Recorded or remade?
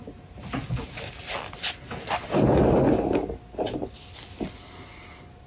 recorded